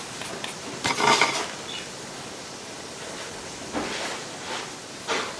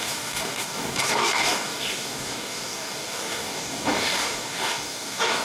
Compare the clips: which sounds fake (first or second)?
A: second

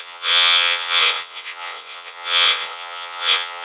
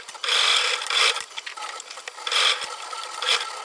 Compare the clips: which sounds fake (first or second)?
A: first